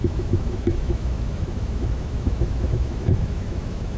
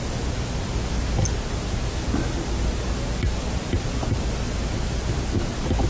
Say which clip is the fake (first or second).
first